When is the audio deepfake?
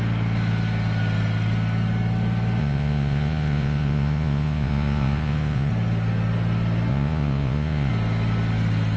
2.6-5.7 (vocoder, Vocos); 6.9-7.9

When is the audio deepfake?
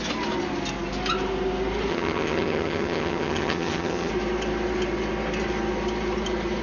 1.9-4.1 (vocoder, HiFi-GAN)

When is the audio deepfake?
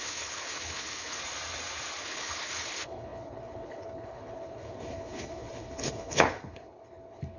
0.0-1.2 (codec, HILCodec); 2.0-7.4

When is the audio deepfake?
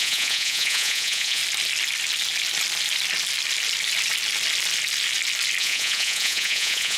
0.0-1.4 (vocoder, Vocos); 5.6-7.0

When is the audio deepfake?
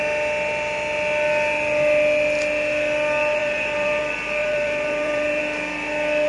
3.4-4.0 (vocoder, BigVGAN v2); 4.4-5.4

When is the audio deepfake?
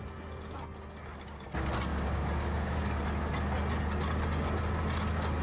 1.9-3.0 (codec, DAC)